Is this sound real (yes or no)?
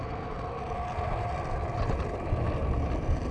yes